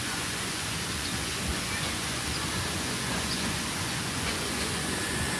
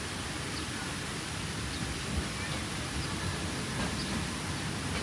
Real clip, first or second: second